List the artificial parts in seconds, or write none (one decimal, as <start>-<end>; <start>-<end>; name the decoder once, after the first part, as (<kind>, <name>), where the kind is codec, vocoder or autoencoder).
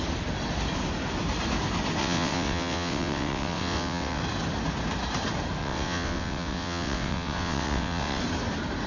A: 2.0-4.2 (vocoder, WaveNeXt); 5.6-8.2